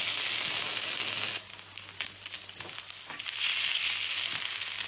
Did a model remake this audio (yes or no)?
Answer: no